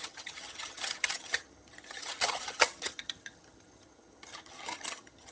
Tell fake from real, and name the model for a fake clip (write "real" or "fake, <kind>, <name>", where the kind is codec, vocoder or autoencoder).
fake, vocoder, HiFi-GAN